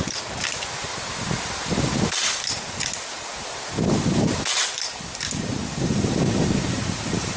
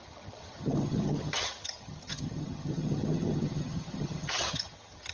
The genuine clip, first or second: first